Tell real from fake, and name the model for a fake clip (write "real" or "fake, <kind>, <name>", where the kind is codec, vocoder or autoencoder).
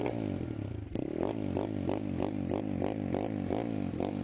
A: real